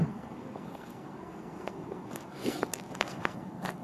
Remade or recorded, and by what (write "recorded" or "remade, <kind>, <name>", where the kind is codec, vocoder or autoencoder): remade, codec, SNAC